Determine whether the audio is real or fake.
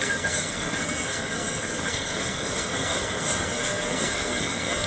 fake